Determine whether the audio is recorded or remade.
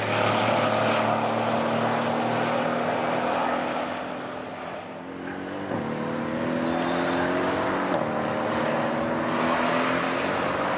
recorded